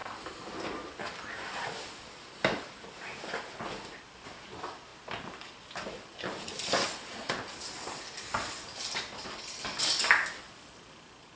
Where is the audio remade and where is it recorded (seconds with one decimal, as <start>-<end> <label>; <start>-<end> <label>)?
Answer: 0.0-11.4 recorded